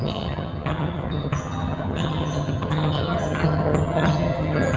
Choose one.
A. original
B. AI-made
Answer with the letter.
B